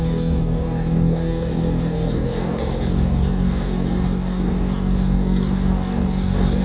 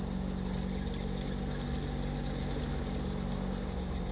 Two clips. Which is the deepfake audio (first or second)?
first